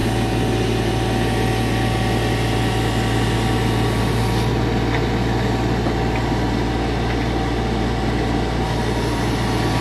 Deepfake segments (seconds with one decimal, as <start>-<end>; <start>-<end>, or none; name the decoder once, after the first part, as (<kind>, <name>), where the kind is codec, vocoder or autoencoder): none